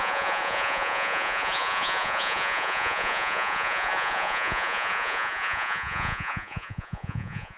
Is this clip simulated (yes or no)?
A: yes